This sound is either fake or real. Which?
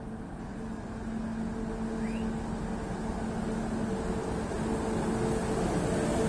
real